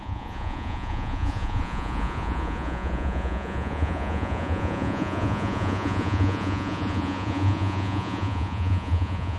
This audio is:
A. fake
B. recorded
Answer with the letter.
A